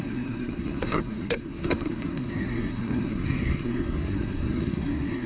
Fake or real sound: fake